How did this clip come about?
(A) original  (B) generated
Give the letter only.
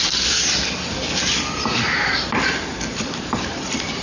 B